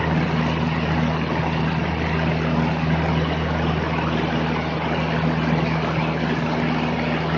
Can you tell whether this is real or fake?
real